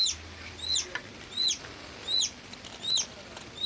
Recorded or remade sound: recorded